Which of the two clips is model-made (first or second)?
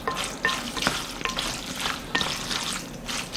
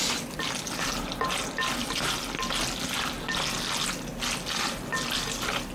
first